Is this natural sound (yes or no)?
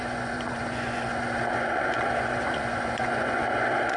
no